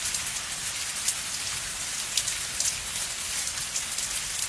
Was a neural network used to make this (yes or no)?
no